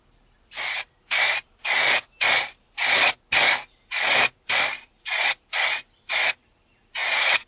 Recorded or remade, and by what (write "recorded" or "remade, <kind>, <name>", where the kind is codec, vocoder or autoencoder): recorded